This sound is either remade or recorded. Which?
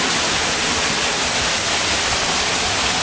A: recorded